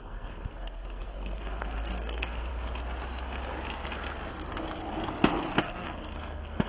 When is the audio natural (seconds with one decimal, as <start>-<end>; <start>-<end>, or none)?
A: 2.5-5.6